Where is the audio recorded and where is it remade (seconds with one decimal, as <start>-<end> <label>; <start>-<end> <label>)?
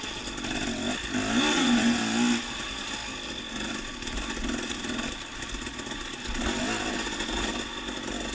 0.0-1.5 recorded; 1.5-2.0 remade; 2.0-8.3 recorded